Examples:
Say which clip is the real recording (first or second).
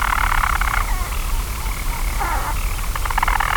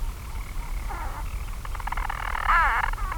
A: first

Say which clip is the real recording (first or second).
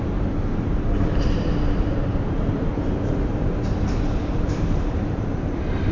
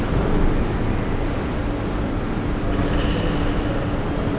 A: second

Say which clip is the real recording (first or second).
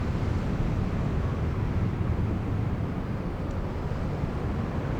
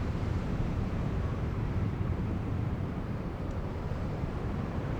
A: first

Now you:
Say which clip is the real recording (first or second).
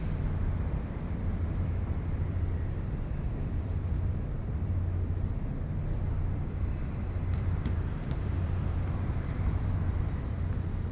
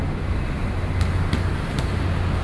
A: second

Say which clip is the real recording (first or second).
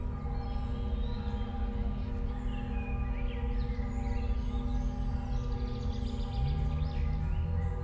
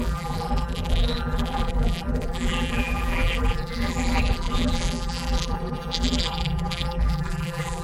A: first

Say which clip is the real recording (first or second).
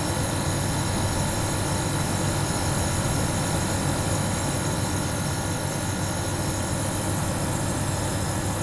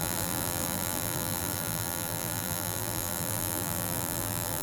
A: first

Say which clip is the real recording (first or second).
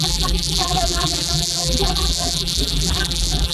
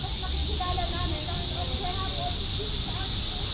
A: second